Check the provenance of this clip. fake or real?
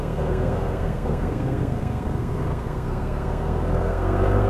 fake